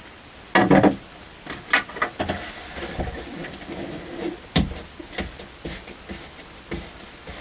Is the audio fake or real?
real